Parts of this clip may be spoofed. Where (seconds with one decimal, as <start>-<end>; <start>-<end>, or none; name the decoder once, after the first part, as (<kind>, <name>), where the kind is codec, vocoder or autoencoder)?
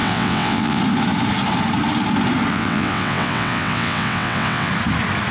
0.0-0.8 (vocoder, WaveNeXt); 2.5-4.7